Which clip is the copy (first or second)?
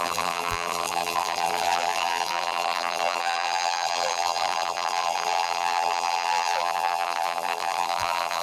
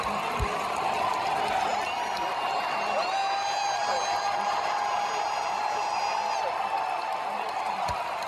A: first